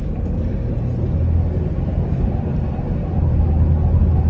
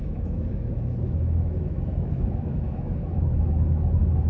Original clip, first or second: first